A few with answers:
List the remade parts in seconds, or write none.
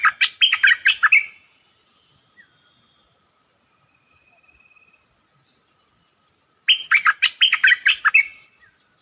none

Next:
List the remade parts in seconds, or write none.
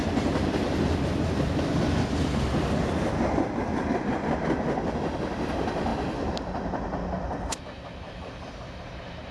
none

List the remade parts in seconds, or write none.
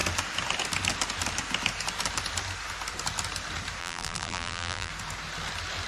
3.8-4.9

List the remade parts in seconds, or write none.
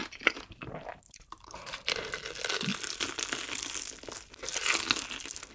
0.0-2.1